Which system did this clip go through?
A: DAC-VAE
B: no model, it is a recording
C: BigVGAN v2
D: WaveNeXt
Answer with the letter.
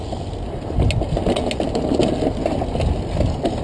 B